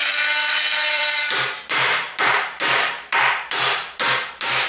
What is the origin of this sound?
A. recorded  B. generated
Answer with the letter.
B